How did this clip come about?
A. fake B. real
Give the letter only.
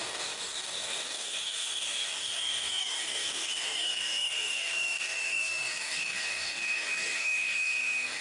A